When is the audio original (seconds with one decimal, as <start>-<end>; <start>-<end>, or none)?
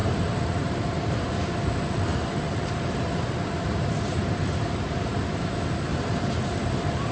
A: 1.2-2.1; 3.1-4.2; 5.5-5.9; 6.4-7.1